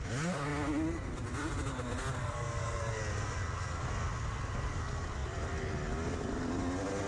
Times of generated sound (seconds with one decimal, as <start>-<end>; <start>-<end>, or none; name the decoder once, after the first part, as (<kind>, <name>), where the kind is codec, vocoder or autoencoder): 2.2-3.0 (codec, SNAC)